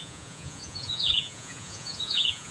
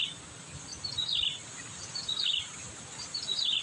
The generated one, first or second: first